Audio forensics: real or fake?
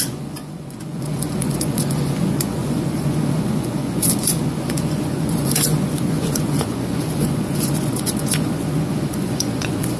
fake